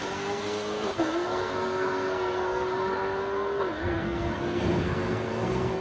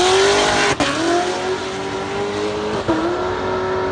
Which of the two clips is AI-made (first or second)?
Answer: first